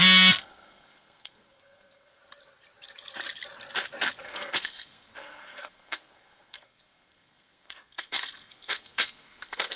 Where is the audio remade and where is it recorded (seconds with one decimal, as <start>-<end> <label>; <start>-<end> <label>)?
0.0-2.2 remade; 2.2-4.2 recorded; 4.2-9.8 remade